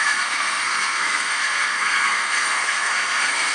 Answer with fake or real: fake